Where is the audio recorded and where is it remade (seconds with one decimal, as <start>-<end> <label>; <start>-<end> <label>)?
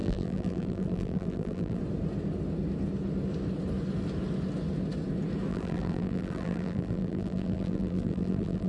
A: 0.0-1.8 remade; 1.8-5.5 recorded; 5.5-8.7 remade